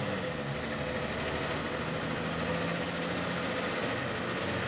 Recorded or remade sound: recorded